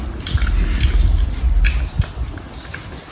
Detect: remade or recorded recorded